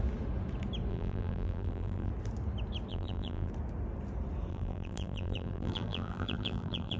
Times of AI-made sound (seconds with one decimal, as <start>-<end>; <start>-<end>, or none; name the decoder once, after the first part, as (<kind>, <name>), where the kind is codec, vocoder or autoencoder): 0.9-2.1 (vocoder, BigVGAN v2); 2.9-3.5; 4.5-7.0